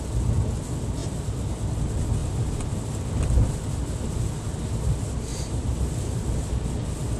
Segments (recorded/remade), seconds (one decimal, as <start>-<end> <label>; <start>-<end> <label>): 0.0-5.3 recorded; 5.3-5.9 remade; 5.9-7.2 recorded